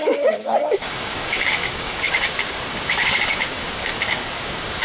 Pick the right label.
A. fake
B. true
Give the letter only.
A